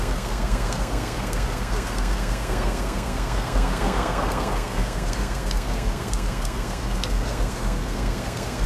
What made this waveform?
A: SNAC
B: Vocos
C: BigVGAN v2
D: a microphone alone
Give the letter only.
A